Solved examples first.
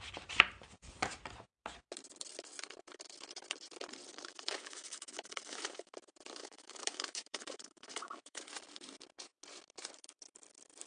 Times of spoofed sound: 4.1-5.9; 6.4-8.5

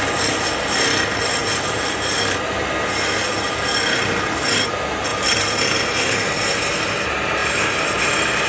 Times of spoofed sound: 1.4-2.4; 5.1-6.8; 7.4-8.0

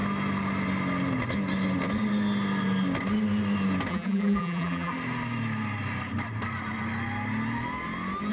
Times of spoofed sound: 3.9-4.9